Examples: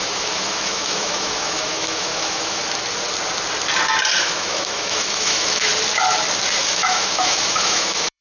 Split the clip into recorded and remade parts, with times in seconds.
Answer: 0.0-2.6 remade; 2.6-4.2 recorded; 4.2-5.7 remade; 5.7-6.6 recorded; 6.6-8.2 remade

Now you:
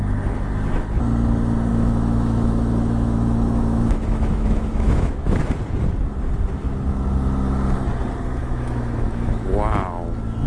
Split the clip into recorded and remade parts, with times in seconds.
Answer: 0.0-1.7 recorded; 1.7-5.4 remade; 5.4-8.4 recorded; 8.4-9.5 remade; 9.5-10.5 recorded

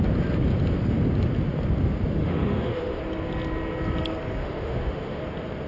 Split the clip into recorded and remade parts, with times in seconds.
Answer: 0.0-2.2 recorded; 2.2-3.0 remade; 3.0-4.4 recorded; 4.4-5.2 remade; 5.2-5.7 recorded

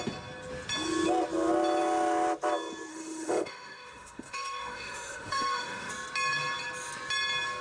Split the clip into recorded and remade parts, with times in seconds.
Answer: 0.0-2.9 recorded; 2.9-5.9 remade; 5.9-7.6 recorded

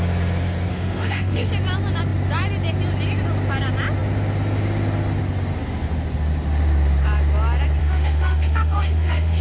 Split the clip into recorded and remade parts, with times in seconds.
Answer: 0.0-0.7 recorded; 0.7-1.5 remade; 1.5-7.8 recorded; 7.8-9.4 remade

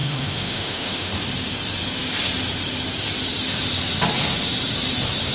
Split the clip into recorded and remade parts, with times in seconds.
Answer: 0.0-1.1 remade; 1.1-5.3 recorded

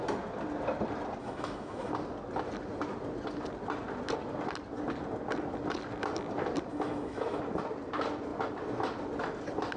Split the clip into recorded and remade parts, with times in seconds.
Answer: 0.0-1.2 recorded; 1.2-1.9 remade; 1.9-6.7 recorded; 6.7-7.4 remade; 7.4-9.8 recorded

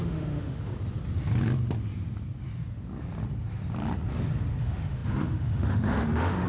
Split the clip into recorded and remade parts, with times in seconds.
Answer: 0.0-0.7 remade; 0.7-4.6 recorded; 4.6-6.5 remade